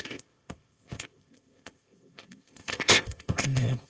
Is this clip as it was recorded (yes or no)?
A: no